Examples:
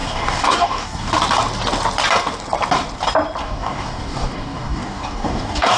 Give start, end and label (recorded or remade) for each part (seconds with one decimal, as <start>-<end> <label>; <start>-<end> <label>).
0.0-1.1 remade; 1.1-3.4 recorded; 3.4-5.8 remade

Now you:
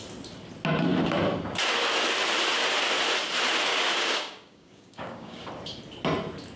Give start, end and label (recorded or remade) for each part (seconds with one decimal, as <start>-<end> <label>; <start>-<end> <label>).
0.0-3.7 recorded; 3.7-5.5 remade; 5.5-6.6 recorded

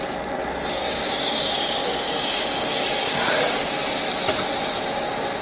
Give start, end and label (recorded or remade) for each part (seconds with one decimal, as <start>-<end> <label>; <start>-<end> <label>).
0.0-0.8 recorded; 0.8-3.7 remade; 3.7-5.4 recorded

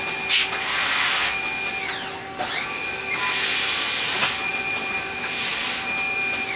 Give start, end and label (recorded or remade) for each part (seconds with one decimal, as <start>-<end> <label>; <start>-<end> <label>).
0.0-6.6 recorded

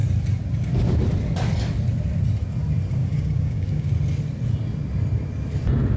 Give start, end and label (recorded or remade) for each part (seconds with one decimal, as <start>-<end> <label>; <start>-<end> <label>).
0.0-3.0 recorded; 3.0-3.9 remade; 3.9-6.0 recorded

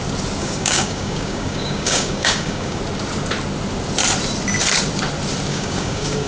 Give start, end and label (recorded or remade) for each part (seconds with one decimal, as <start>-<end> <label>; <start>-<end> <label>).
0.0-0.4 recorded; 0.4-2.8 remade; 2.8-5.5 recorded; 5.5-6.3 remade